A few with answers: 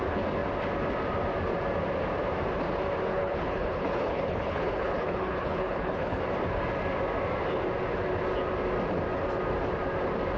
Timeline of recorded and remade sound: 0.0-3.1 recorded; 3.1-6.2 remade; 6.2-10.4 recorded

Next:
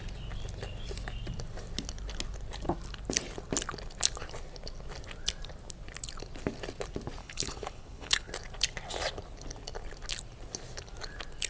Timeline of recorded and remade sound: 0.0-7.2 recorded; 7.2-8.3 remade; 8.3-11.5 recorded